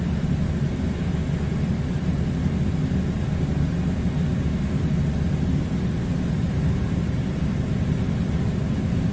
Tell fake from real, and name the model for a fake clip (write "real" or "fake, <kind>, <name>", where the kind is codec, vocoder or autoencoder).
real